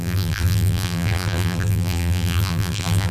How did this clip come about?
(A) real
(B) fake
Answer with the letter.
B